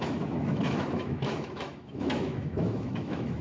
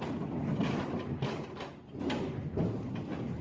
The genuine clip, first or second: second